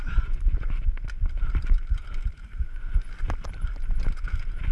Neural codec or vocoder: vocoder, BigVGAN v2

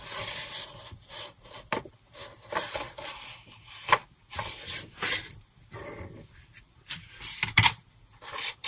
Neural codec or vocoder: vocoder, BigVGAN v2